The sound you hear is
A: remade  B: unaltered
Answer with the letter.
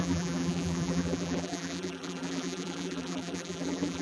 A